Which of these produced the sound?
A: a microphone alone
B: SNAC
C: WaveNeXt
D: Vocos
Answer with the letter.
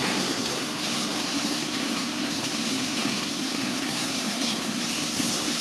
B